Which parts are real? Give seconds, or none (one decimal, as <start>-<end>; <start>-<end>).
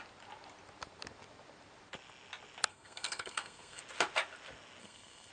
0.0-2.7; 3.8-4.8